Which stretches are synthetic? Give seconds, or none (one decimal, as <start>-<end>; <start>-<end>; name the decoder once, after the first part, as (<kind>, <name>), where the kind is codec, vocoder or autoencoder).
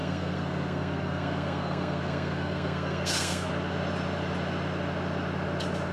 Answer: 0.0-3.5 (codec, SNAC)